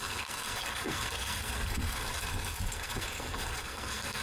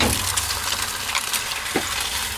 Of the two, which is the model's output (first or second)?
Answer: first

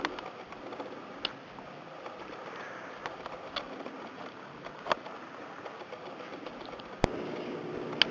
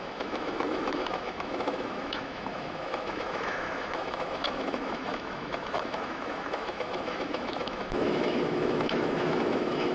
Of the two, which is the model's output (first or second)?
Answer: second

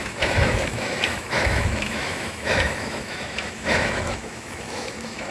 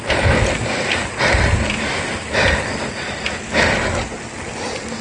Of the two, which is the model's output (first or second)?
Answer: first